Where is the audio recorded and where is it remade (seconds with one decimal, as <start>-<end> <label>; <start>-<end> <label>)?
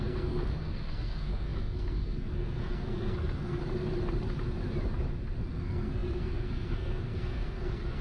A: 0.0-3.6 remade; 3.6-5.5 recorded; 5.5-8.0 remade